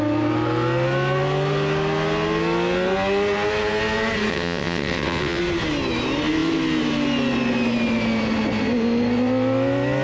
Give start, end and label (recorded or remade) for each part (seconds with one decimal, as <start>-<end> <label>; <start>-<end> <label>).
0.0-4.3 recorded; 4.3-5.4 remade; 5.4-10.0 recorded